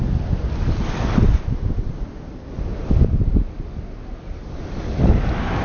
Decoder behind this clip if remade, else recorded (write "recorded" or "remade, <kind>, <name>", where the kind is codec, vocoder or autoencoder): recorded